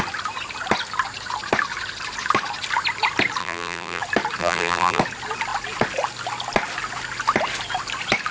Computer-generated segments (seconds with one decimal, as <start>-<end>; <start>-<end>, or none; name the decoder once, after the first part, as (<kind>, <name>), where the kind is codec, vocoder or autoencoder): 3.4-4.0 (vocoder, BigVGAN v2); 4.4-5.0